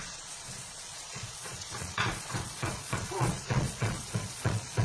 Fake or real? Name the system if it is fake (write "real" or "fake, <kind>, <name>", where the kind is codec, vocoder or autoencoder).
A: fake, vocoder, Vocos